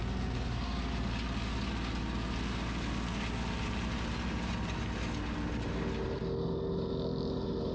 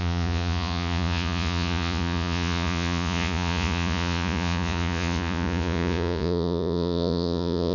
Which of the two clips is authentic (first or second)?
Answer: first